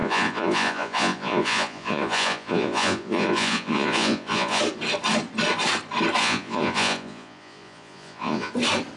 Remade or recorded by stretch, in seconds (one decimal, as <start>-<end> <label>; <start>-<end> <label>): 0.0-4.6 remade; 4.6-6.2 recorded; 6.2-8.5 remade; 8.5-9.0 recorded